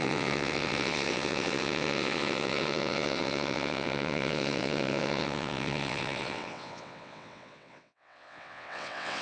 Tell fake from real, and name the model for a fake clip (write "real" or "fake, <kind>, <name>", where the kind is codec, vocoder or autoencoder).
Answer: fake, vocoder, WaveNeXt